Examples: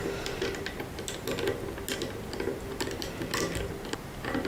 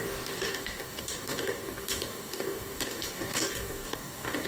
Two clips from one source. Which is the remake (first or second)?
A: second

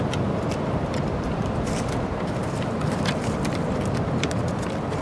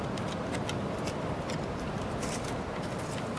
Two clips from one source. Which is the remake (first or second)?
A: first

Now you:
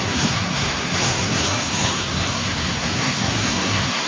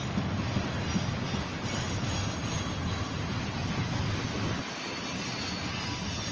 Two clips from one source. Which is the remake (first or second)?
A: first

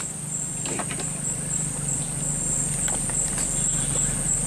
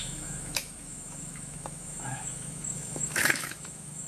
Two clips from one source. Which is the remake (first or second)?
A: second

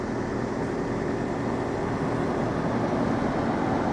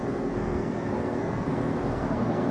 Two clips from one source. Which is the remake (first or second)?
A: second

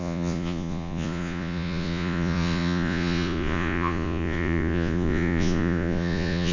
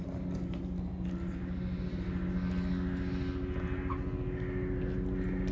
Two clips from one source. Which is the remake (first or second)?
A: first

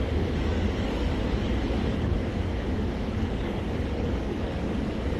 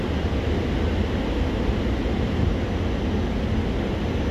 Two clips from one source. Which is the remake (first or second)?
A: first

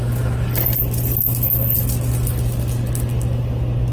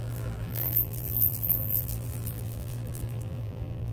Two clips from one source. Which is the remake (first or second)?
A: second